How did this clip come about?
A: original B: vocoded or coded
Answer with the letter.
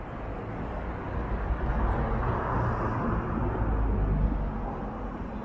A